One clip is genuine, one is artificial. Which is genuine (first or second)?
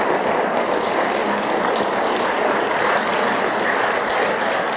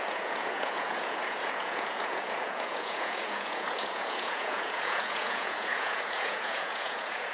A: first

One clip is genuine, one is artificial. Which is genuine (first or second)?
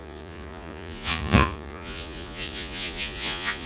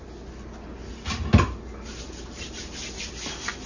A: second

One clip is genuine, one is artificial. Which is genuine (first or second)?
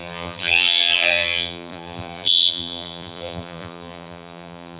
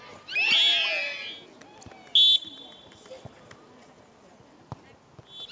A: second